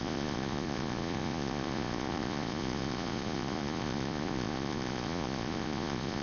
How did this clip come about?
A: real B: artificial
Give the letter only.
B